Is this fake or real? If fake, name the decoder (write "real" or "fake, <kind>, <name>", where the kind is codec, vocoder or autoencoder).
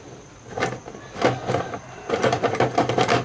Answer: real